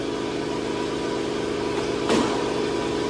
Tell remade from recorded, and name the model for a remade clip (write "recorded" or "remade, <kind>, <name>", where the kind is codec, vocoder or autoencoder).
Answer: recorded